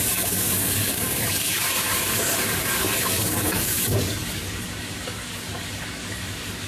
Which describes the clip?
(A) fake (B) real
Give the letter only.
A